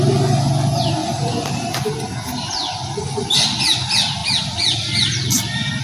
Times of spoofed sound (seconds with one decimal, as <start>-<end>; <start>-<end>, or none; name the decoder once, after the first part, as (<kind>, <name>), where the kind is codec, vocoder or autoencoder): 1.0-3.4 (vocoder, BigVGAN v2)